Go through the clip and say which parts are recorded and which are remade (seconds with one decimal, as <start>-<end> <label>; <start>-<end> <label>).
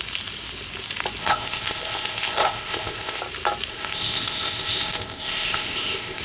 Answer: 0.0-1.2 recorded; 1.2-3.2 remade; 3.2-3.7 recorded; 3.7-6.2 remade